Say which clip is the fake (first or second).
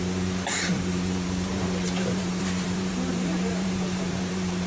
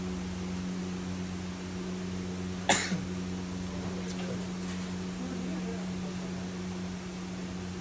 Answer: first